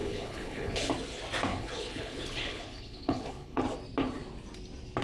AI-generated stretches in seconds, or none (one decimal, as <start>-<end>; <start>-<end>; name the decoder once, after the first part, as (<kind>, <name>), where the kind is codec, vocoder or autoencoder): 0.0-0.9 (codec, HILCodec); 1.5-3.6